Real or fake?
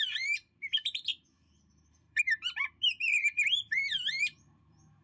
fake